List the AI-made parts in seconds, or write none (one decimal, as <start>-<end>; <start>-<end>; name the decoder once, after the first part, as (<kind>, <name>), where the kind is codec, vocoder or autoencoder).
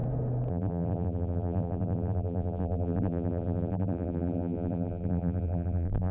0.5-6.1 (vocoder, BigVGAN v2)